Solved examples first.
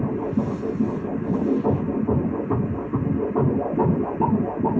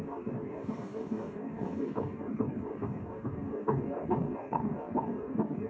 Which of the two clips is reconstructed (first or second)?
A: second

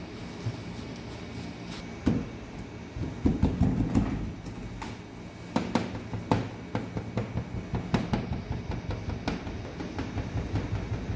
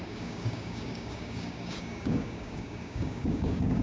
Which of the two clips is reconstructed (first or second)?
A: second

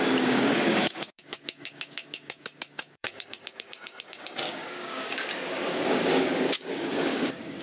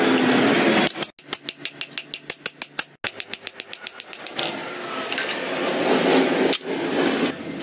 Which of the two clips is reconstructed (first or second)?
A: first